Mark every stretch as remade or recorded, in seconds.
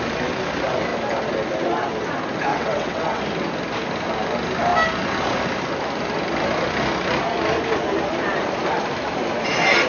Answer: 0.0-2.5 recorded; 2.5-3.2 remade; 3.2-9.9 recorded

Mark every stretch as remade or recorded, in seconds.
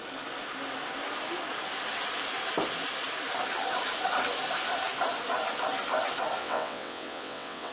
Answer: 0.0-6.4 recorded; 6.4-7.7 remade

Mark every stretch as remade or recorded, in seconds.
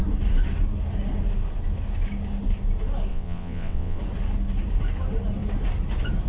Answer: 0.0-3.1 recorded; 3.1-4.0 remade; 4.0-6.3 recorded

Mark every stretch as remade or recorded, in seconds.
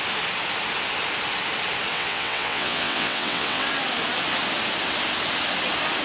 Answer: 0.0-1.9 recorded; 1.9-3.7 remade; 3.7-6.0 recorded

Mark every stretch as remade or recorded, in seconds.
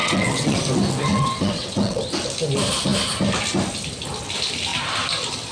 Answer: 0.0-0.6 remade; 0.6-1.1 recorded; 1.1-2.0 remade; 2.0-5.5 recorded